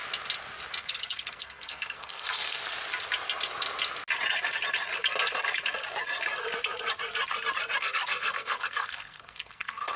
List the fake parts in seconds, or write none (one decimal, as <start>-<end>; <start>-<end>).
0.8-2.6; 7.8-10.0